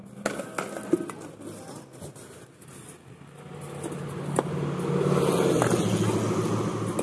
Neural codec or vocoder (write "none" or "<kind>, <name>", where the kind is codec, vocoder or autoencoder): none